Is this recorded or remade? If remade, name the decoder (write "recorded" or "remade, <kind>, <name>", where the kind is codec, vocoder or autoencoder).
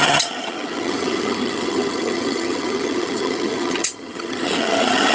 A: remade, vocoder, HiFi-GAN